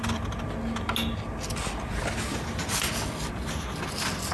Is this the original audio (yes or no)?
yes